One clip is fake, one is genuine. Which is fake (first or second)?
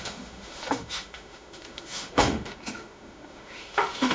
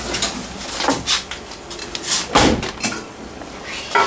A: first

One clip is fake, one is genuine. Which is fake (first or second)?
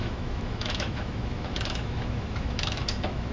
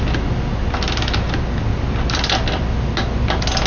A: first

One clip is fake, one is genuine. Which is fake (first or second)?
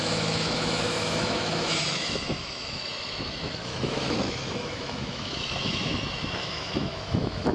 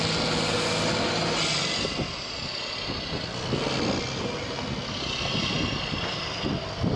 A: first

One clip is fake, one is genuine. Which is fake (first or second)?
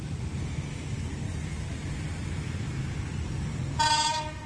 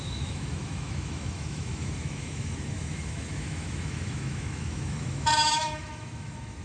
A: second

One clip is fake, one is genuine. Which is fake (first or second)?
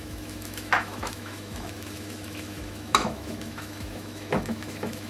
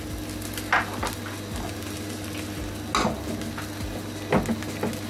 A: first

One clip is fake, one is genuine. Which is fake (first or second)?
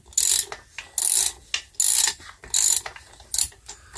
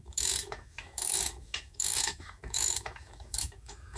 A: second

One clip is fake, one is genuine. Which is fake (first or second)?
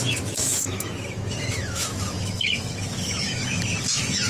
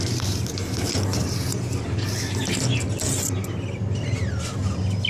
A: first